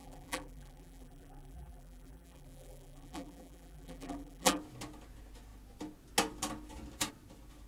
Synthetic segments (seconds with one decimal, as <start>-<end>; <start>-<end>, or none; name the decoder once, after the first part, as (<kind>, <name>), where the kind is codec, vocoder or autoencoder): 0.0-4.6 (vocoder, BigVGAN v2)